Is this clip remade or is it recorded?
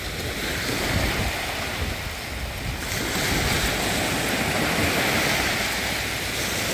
recorded